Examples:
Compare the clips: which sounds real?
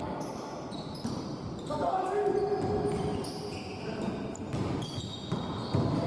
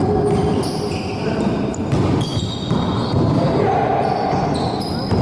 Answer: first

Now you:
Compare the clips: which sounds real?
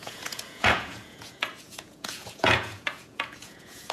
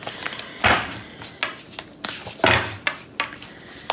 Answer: second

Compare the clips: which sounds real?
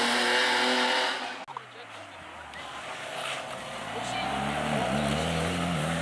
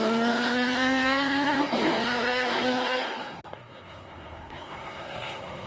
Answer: first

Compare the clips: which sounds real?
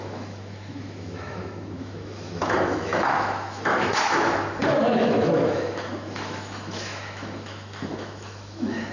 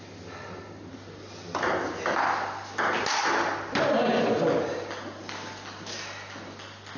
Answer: second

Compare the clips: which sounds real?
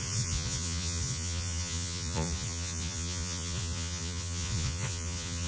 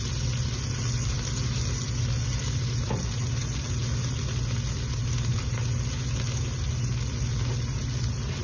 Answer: second